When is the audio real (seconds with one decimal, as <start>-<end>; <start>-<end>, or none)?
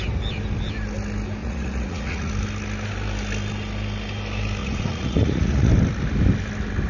0.0-1.4; 2.3-4.6; 5.7-6.9